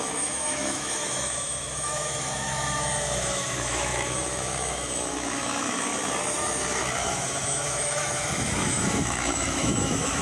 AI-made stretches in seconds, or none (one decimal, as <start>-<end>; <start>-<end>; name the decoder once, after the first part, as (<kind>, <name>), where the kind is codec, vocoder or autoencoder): 0.0-5.9 (autoencoder, DAC-VAE); 6.8-10.2